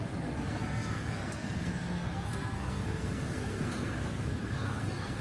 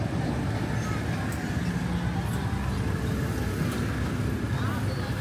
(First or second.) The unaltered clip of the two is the second